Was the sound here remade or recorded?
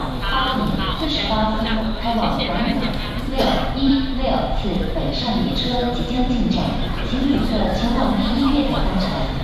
remade